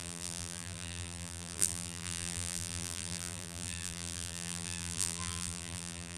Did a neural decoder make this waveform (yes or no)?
yes